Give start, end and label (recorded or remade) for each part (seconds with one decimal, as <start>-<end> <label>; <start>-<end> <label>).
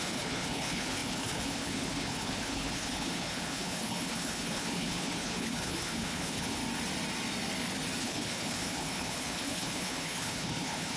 0.0-6.6 remade; 6.6-8.0 recorded; 8.0-11.0 remade